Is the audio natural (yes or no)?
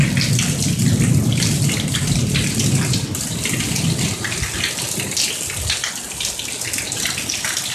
yes